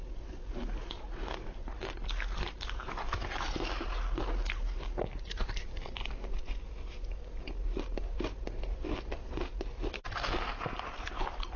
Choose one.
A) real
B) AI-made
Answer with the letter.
A